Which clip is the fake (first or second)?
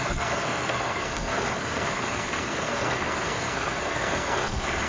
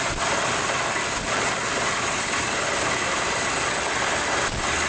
first